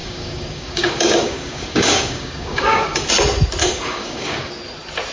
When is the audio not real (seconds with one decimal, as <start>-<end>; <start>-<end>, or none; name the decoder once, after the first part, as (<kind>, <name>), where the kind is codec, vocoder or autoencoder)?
0.0-3.1 (codec, DAC); 3.6-4.5

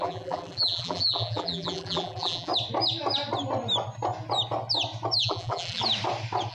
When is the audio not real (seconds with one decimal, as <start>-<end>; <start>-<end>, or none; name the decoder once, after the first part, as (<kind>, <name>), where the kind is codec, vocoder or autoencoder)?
0.0-2.5 (vocoder, BigVGAN v2); 5.2-5.8

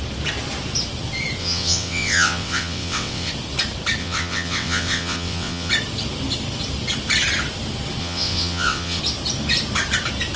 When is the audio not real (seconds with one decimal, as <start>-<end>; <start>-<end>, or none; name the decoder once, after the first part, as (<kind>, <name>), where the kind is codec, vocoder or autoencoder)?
1.4-3.3 (vocoder, WaveNeXt); 4.0-5.7; 8.0-9.0

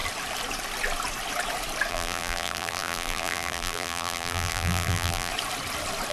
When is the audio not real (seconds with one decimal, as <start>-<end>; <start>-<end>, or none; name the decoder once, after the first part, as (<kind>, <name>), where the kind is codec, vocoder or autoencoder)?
1.9-5.3 (vocoder, BigVGAN v2)

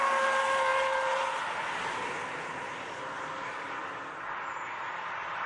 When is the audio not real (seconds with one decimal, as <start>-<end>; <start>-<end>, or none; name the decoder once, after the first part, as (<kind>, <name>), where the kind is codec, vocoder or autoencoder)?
none

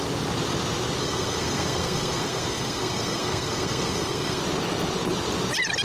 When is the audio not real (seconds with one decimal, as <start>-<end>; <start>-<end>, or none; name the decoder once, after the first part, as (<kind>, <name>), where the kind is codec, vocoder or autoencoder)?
1.0-4.4 (codec, SNAC)

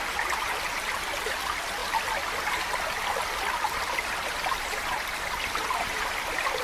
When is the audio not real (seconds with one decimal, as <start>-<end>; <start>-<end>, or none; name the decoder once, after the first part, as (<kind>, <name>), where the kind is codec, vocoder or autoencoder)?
none

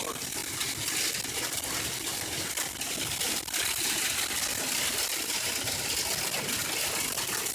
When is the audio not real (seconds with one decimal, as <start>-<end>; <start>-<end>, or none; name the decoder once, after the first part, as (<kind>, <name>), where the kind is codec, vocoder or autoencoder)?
5.1-5.8 (vocoder, BigVGAN v2)